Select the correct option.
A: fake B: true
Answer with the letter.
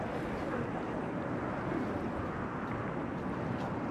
B